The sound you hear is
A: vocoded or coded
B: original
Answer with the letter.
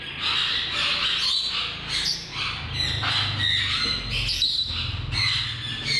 B